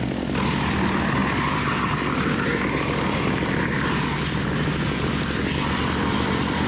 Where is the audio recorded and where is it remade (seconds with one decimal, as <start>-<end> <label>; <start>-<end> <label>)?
0.0-6.7 recorded